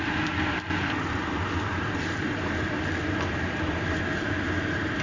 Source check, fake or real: real